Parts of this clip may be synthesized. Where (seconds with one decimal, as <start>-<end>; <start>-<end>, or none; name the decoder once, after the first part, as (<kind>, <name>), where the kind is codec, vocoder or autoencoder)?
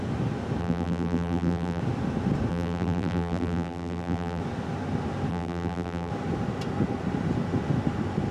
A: 0.6-1.8 (vocoder, BigVGAN v2); 2.5-4.4; 5.3-6.1